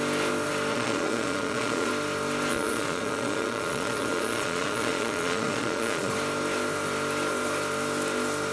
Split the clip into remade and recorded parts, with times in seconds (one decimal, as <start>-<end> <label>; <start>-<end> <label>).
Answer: 0.0-0.7 recorded; 0.7-1.9 remade; 1.9-2.5 recorded; 2.5-6.1 remade; 6.1-8.5 recorded